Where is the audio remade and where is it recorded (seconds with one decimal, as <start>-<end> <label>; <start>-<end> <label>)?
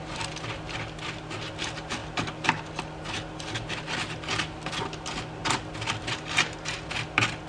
0.0-2.0 recorded; 2.0-3.7 remade; 3.7-7.5 recorded